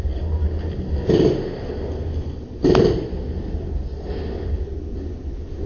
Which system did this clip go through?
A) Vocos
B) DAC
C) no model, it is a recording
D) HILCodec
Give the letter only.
C